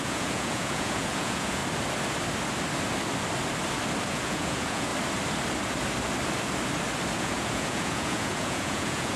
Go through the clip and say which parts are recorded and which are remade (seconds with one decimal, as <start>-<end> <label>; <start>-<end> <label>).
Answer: 0.0-1.6 remade; 1.6-4.1 recorded; 4.1-4.9 remade; 4.9-7.2 recorded; 7.2-9.2 remade